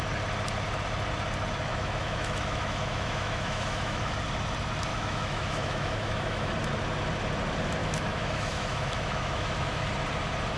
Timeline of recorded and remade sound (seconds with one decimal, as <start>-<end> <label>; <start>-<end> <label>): 0.0-1.7 recorded; 1.7-4.1 remade; 4.1-4.9 recorded; 4.9-6.5 remade; 6.5-7.8 recorded; 7.8-9.8 remade; 9.8-10.6 recorded